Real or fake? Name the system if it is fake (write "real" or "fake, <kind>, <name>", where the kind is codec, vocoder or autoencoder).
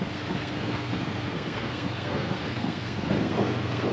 fake, codec, SNAC